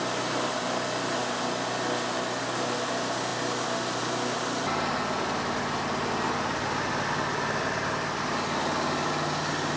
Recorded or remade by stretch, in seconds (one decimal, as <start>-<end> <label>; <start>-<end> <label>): 0.0-9.8 recorded